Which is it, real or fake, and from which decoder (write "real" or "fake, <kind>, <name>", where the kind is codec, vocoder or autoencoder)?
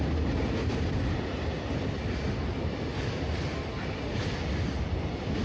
real